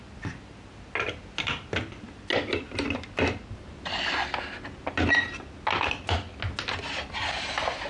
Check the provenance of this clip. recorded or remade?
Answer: recorded